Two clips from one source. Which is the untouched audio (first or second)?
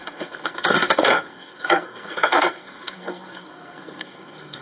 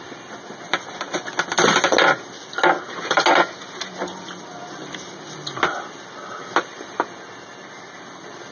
second